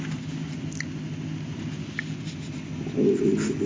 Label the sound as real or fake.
real